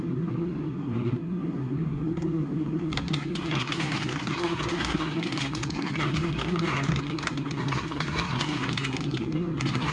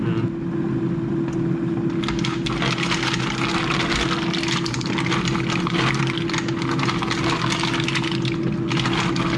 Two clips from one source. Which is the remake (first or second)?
first